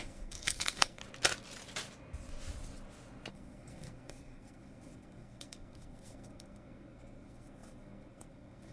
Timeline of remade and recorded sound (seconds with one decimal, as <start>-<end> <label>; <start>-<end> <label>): 0.0-1.0 remade; 1.0-3.3 recorded; 3.3-8.7 remade

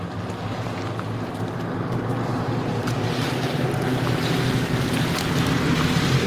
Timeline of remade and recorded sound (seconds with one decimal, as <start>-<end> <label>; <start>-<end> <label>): 0.0-2.3 recorded; 2.3-6.3 remade

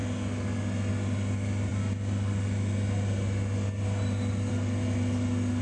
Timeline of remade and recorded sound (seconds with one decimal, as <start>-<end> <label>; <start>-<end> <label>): 0.0-5.6 recorded

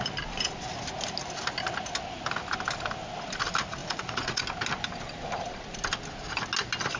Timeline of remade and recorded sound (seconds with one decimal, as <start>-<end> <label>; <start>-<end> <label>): 0.0-3.8 recorded; 3.8-4.4 remade; 4.4-7.0 recorded

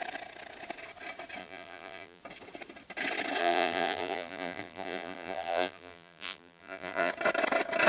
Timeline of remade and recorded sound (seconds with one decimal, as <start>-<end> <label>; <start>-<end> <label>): 0.0-1.4 recorded; 1.4-2.2 remade; 2.2-3.4 recorded; 3.4-7.1 remade; 7.1-7.9 recorded

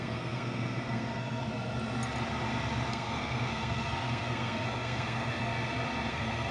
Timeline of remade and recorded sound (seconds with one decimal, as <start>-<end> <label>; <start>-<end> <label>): 0.0-1.4 remade; 1.4-2.9 recorded; 2.9-5.5 remade; 5.5-6.1 recorded; 6.1-6.5 remade